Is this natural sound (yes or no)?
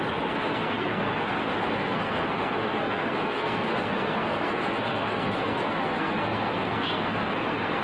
no